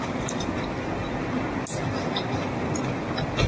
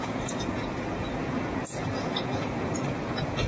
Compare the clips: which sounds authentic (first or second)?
first